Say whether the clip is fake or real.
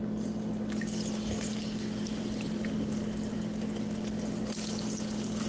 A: real